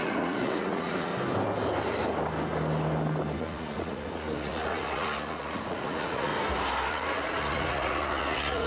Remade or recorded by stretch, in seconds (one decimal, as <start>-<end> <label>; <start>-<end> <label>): 0.0-1.1 remade; 1.1-3.4 recorded; 3.4-6.3 remade; 6.3-6.9 recorded; 6.9-8.7 remade